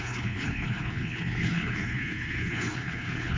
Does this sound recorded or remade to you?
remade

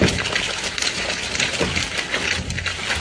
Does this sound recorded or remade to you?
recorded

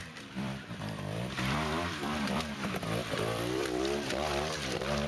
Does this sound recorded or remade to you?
remade